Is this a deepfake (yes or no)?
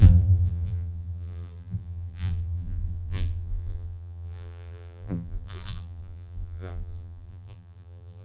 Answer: yes